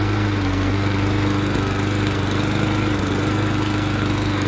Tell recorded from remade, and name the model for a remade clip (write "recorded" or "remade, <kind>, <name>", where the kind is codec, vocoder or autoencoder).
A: remade, codec, SNAC